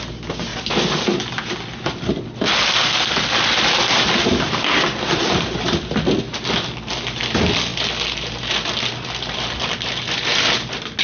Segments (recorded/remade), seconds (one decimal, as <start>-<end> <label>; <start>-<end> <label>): 0.0-7.7 recorded; 7.7-8.5 remade; 8.5-11.0 recorded